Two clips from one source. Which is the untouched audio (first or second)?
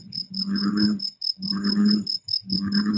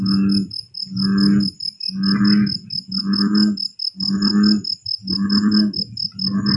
second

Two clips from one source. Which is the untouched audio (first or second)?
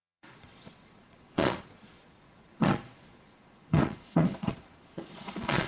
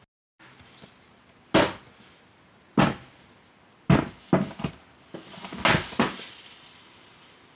second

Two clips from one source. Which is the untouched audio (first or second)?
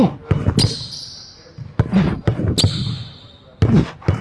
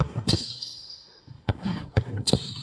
first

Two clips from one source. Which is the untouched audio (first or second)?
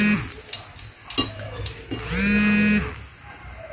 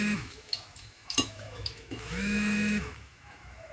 first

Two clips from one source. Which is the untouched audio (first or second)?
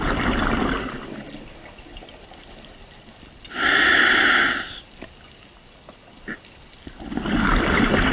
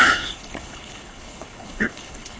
first